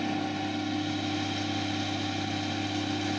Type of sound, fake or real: real